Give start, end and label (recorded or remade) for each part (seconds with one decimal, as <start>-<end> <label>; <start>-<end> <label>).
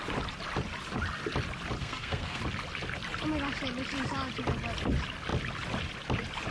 0.0-1.8 recorded; 1.8-2.4 remade; 2.4-6.5 recorded